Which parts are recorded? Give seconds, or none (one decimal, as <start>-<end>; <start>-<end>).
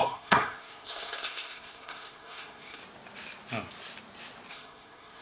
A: 2.8-4.5